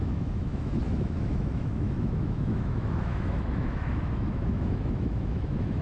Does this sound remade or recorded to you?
remade